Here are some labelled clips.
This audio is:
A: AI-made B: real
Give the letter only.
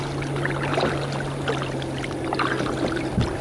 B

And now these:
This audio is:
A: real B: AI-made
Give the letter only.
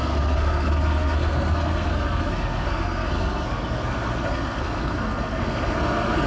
B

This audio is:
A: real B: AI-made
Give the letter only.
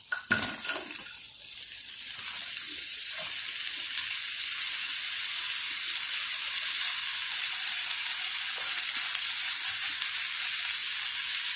A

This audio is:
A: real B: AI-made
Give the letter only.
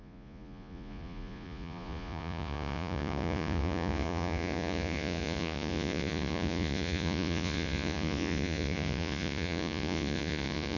B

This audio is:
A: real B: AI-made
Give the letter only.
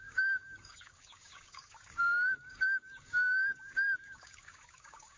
B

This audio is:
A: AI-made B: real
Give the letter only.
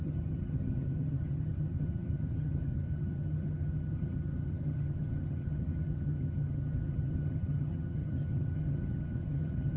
A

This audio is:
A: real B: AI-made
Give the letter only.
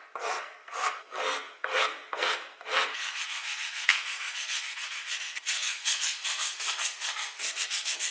B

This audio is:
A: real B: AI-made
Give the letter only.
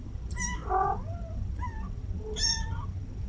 A